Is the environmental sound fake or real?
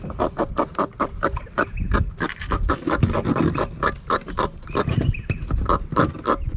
real